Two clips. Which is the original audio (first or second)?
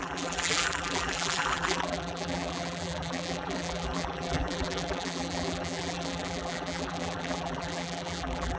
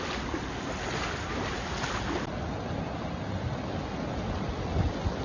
second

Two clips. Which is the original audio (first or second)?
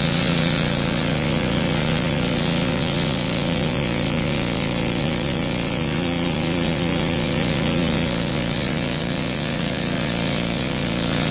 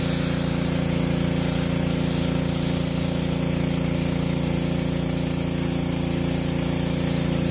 second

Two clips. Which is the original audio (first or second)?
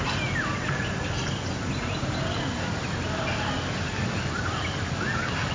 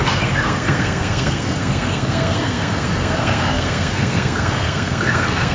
first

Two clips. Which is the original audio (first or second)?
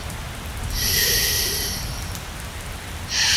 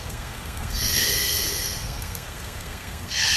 first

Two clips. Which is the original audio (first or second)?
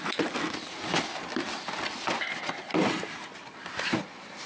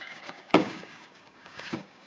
first